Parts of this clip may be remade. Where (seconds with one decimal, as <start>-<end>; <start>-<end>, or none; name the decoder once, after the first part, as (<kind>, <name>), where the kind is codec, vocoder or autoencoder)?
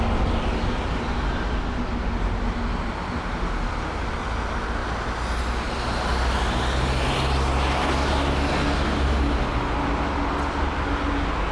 none